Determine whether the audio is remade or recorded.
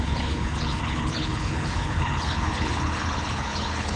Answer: remade